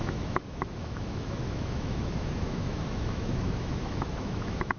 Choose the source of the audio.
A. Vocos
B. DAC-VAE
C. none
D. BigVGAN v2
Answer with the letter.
B